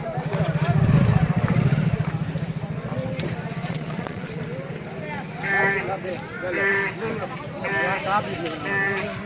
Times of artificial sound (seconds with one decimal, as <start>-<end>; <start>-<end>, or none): 3.6-4.4

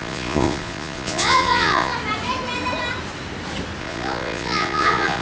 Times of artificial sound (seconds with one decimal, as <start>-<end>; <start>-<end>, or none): 0.0-1.9; 3.8-5.2

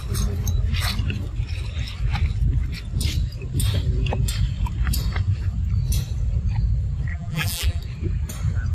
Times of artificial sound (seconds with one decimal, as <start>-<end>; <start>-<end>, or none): 7.1-7.8